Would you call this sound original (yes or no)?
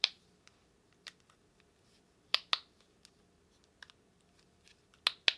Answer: yes